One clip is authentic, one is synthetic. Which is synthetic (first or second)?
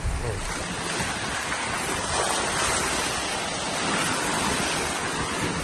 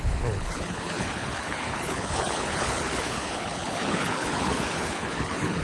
second